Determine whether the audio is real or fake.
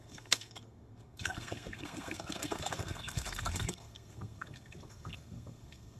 fake